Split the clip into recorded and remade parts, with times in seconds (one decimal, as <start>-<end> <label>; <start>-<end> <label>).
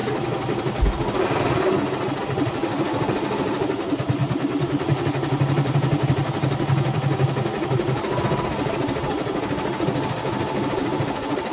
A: 0.0-4.2 remade; 4.2-9.1 recorded; 9.1-11.5 remade